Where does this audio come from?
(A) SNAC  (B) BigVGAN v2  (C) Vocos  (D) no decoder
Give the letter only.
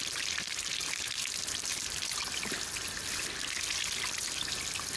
D